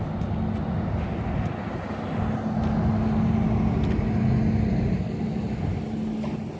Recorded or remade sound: recorded